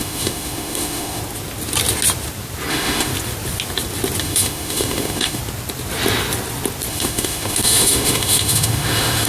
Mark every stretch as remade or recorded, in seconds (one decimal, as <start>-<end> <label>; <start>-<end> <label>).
0.0-1.2 remade; 1.2-2.7 recorded; 2.7-3.1 remade; 3.1-4.2 recorded; 4.2-5.4 remade; 5.4-6.9 recorded; 6.9-9.3 remade